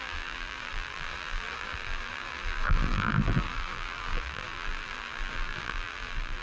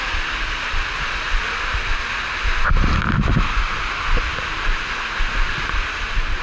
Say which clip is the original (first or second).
second